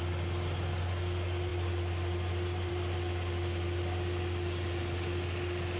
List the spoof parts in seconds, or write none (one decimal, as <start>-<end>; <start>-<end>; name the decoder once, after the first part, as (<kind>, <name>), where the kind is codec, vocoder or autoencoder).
none